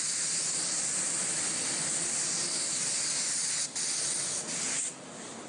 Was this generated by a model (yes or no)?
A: no